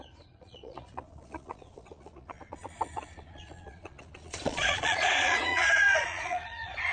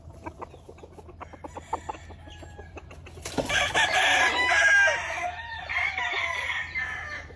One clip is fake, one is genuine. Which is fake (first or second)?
first